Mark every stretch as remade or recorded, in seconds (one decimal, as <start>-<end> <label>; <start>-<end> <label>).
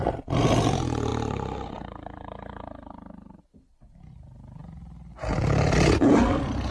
0.0-6.7 recorded